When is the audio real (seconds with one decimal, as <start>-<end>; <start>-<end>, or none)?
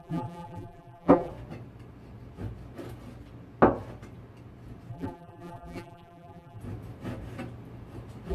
1.3-4.9; 6.6-8.3